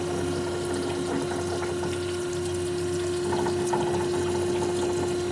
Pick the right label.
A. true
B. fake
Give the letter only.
A